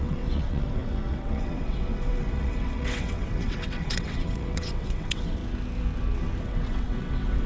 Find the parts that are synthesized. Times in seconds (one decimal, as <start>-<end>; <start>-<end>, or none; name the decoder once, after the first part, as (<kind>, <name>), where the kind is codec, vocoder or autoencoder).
0.0-5.4 (vocoder, WaveNeXt); 6.4-7.5